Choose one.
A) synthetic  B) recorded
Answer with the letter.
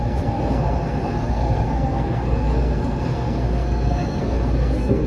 A